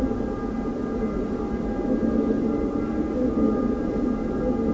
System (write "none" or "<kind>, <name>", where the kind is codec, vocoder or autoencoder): none